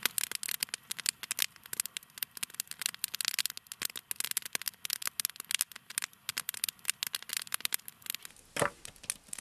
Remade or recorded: recorded